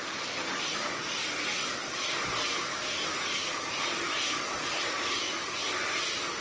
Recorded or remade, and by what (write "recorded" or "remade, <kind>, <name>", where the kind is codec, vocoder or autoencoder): recorded